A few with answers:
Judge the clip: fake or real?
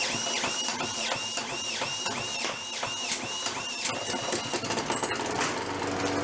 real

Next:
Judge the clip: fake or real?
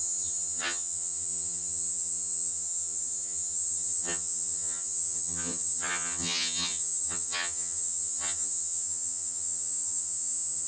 fake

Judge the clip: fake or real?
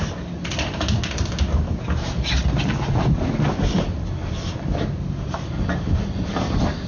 real